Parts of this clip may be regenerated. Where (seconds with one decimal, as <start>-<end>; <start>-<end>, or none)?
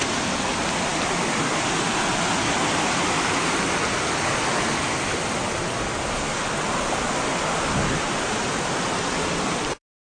none